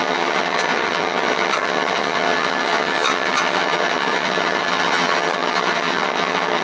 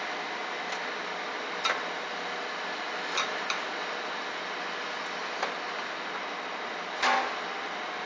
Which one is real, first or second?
second